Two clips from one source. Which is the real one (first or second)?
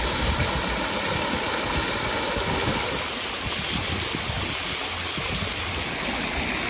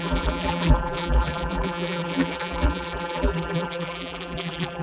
first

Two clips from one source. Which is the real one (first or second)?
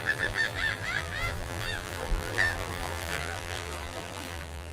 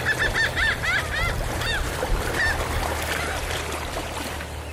second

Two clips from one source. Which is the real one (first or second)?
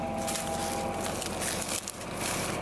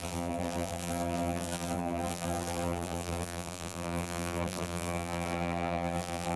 first